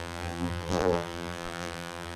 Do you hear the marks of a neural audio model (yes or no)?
yes